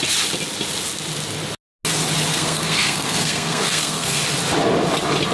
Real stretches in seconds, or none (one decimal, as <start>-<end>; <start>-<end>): 0.0-2.3; 4.2-5.3